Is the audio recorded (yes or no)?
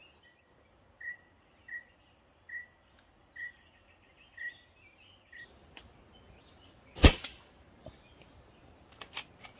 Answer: yes